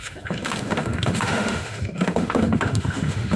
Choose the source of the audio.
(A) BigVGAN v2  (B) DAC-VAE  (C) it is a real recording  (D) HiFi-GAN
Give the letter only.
B